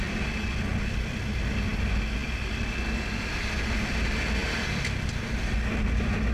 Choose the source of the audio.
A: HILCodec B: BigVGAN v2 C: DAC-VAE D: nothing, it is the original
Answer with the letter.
D